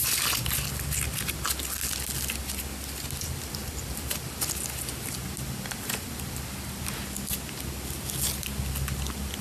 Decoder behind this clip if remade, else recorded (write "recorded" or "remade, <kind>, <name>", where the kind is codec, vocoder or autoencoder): recorded